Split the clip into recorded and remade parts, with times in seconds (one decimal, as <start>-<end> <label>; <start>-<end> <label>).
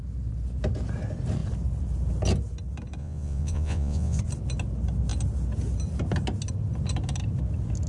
0.0-3.0 recorded; 3.0-4.2 remade; 4.2-7.9 recorded